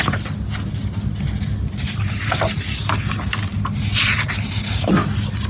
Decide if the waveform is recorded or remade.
recorded